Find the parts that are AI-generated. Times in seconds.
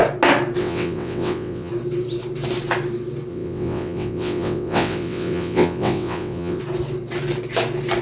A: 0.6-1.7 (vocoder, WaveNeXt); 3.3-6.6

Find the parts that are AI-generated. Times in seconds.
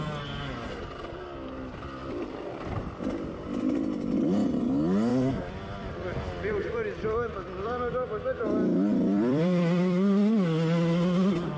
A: 2.0-4.5 (vocoder, BigVGAN v2); 5.1-10.3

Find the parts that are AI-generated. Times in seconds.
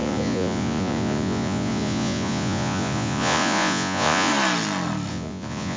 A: 0.0-4.3 (vocoder, Vocos); 5.1-5.8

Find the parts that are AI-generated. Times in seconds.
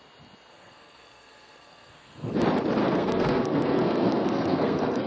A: 0.5-2.4 (codec, SNAC); 2.8-5.1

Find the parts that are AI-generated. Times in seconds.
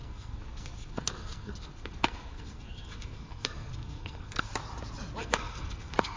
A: 0.0-4.5 (codec, SNAC); 5.2-6.2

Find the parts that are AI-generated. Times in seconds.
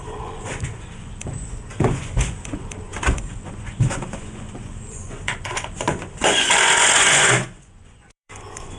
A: 0.0-8.8 (vocoder, Vocos)